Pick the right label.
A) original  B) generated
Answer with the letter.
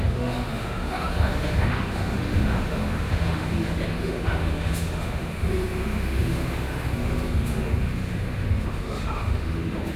B